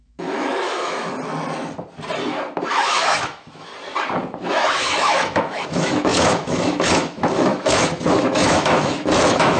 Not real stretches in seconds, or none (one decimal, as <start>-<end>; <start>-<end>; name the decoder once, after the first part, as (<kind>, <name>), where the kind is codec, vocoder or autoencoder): 0.0-1.1 (autoencoder, DAC-VAE); 2.7-3.7; 4.5-9.6